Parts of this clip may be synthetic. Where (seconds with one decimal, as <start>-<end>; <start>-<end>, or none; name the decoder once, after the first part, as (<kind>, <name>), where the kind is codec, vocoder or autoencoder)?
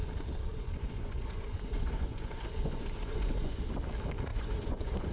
0.5-3.6 (vocoder, Vocos); 4.3-5.1